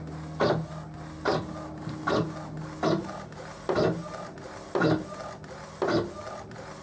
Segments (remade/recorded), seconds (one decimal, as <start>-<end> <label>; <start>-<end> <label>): 0.0-6.8 recorded